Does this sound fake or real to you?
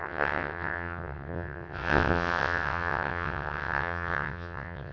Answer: fake